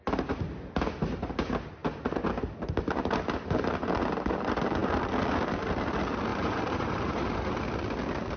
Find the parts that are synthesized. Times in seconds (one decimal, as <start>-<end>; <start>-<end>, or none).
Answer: 6.3-7.6